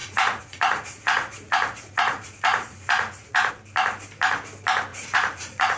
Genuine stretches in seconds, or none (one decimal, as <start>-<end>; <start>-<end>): 3.5-4.9